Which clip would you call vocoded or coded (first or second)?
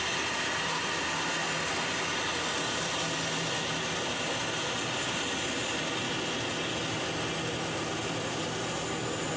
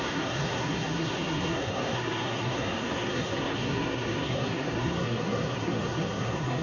second